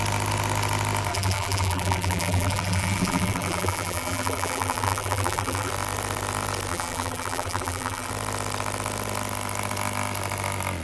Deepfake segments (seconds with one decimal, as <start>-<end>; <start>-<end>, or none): 1.1-5.7; 6.7-8.1